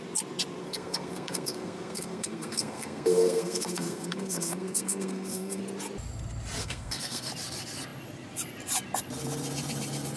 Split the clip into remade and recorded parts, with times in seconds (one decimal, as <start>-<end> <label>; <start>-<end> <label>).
0.0-0.6 recorded; 0.6-5.6 remade; 5.6-6.6 recorded; 6.6-7.3 remade; 7.3-10.2 recorded

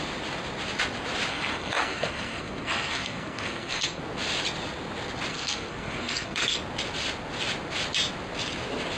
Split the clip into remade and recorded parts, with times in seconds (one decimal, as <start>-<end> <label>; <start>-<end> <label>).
0.0-1.3 recorded; 1.3-4.0 remade; 4.0-5.3 recorded; 5.3-6.6 remade; 6.6-9.0 recorded

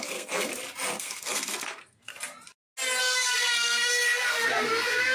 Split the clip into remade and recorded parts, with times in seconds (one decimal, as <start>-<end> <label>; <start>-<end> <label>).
0.0-0.5 remade; 0.5-1.0 recorded; 1.0-2.1 remade; 2.1-3.0 recorded; 3.0-5.1 remade

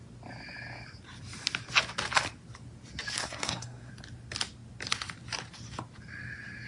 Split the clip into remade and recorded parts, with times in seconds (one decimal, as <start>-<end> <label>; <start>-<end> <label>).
0.0-3.2 recorded; 3.2-3.9 remade; 3.9-6.7 recorded

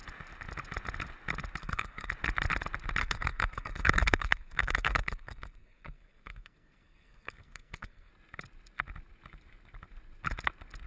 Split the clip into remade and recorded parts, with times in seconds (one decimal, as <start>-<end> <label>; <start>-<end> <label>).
0.0-1.6 recorded; 1.6-2.1 remade; 2.1-3.0 recorded; 3.0-8.1 remade; 8.1-10.9 recorded

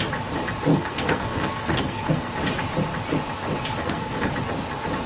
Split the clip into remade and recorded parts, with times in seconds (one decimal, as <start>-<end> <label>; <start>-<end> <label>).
0.0-0.7 recorded; 0.7-2.3 remade; 2.3-3.8 recorded; 3.8-4.3 remade; 4.3-5.1 recorded

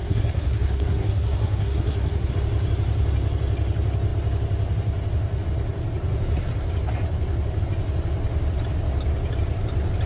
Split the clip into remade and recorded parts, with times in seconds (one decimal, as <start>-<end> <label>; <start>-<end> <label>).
0.0-2.3 remade; 2.3-10.1 recorded